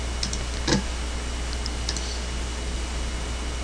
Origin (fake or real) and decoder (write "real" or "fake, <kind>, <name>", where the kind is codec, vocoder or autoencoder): real